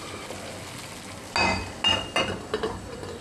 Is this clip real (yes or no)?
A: yes